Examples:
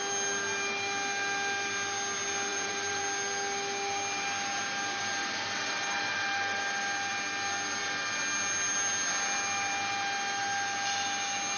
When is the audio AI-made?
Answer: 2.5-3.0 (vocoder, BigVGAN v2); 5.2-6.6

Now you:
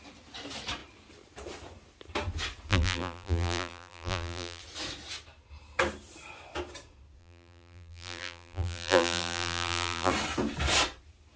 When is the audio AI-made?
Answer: 2.7-4.6 (vocoder, BigVGAN v2); 7.2-10.1

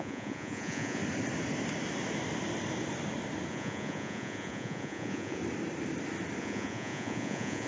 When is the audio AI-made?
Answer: 0.0-1.0 (vocoder, Vocos); 3.5-5.4; 6.4-7.7

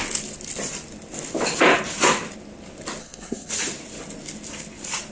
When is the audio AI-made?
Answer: 3.0-3.5 (codec, SNAC)

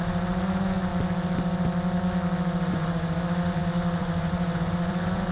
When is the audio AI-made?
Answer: 0.0-0.9 (vocoder, Vocos); 2.7-5.3